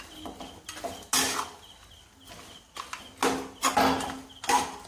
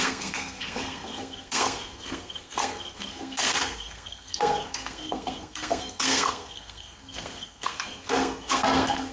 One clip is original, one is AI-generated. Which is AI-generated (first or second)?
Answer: second